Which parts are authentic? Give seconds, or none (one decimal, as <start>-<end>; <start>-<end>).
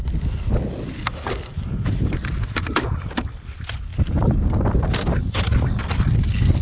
0.0-6.6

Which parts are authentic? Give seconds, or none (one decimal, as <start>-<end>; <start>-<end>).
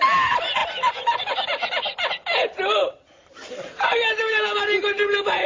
0.0-2.2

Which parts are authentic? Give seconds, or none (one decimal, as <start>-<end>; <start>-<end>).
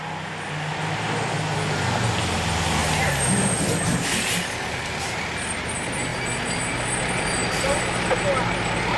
0.0-7.4; 8.3-9.0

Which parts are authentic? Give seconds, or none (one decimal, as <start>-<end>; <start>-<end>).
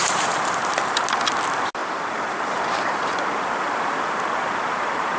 1.0-1.8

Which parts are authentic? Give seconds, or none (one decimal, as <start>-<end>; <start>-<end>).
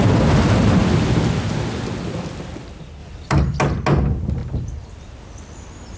0.0-3.0; 3.6-4.4; 5.2-6.0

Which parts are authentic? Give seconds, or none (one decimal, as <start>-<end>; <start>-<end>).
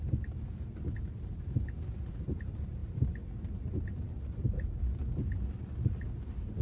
0.0-6.6